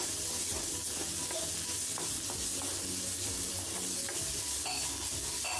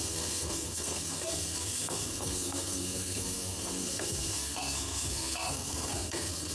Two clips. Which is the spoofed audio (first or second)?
second